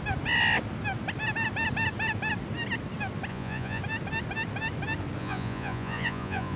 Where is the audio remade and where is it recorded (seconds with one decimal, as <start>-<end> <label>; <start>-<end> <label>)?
0.0-3.3 recorded; 3.3-3.8 remade; 3.8-5.2 recorded; 5.2-6.6 remade